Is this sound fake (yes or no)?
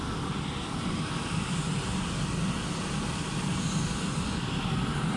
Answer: no